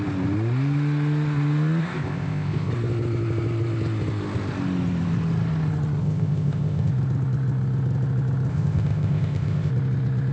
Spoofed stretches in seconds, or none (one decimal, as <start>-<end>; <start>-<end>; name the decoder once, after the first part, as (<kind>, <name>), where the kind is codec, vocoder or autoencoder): 1.8-2.7 (codec, ZipCodec); 6.0-6.9; 8.5-9.7